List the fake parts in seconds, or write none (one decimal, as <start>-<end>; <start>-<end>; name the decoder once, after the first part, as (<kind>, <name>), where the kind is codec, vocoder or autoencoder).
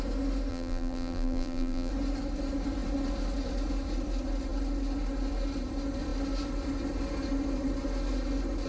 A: 0.5-1.9 (vocoder, BigVGAN v2)